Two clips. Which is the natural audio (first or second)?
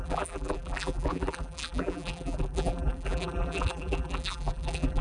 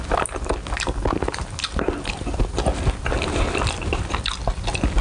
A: second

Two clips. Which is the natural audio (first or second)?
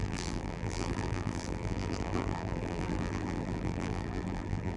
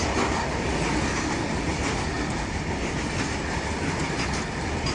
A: second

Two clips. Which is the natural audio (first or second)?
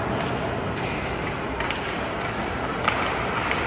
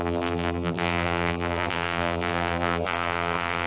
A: first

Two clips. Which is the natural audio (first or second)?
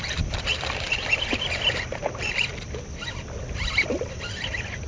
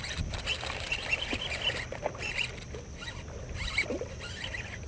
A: second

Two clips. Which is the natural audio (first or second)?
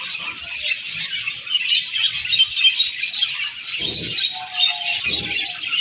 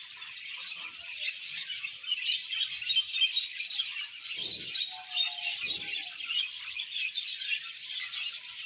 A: first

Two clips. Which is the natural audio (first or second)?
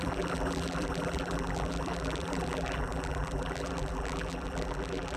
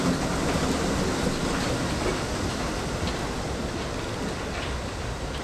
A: second